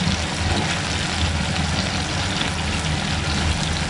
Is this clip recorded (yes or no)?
yes